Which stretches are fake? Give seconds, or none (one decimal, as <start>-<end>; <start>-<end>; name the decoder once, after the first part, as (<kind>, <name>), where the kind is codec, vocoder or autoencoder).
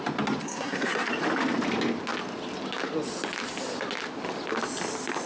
0.4-1.1 (codec, SNAC)